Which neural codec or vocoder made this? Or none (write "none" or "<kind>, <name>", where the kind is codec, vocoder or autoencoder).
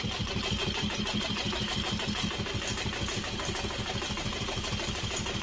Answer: none